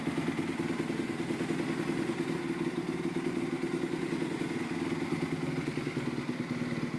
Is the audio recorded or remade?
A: recorded